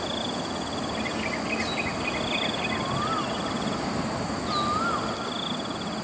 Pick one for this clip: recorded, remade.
recorded